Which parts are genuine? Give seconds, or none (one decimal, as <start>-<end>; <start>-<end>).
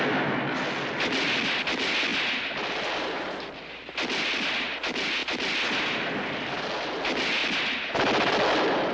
0.0-8.9